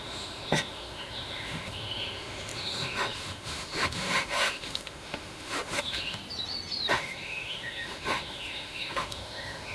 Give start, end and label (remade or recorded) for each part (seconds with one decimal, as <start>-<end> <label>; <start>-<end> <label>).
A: 0.0-6.2 remade; 6.2-6.9 recorded; 6.9-9.7 remade